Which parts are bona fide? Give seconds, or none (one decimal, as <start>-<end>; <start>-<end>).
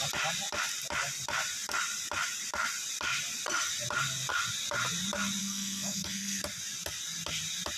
0.0-5.4; 6.4-7.8